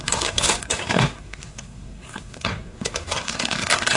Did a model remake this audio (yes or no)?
yes